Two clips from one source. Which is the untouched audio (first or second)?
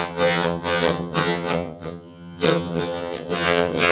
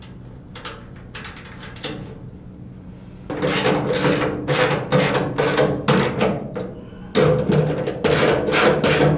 second